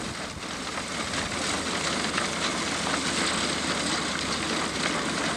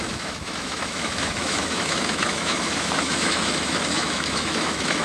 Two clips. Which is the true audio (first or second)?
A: first